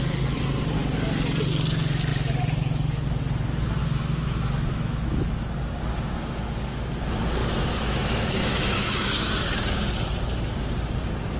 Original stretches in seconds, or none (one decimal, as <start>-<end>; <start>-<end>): 0.0-3.8; 5.4-7.4; 9.4-11.4